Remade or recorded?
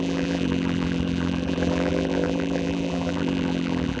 remade